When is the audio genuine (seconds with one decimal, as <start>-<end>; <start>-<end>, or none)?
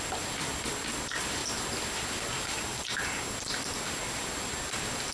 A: 0.0-5.1